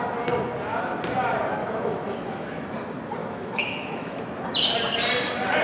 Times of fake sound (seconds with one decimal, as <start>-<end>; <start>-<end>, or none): 1.6-2.7; 3.2-4.2